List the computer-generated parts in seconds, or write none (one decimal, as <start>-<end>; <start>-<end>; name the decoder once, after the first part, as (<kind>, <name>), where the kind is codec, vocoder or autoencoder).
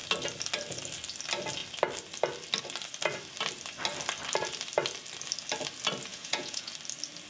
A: 6.1-6.7 (vocoder, Vocos)